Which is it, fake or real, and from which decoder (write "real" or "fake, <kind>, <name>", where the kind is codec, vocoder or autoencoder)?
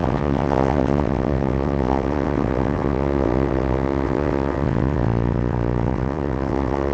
fake, vocoder, WaveNeXt